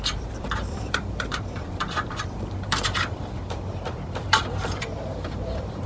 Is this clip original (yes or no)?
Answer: no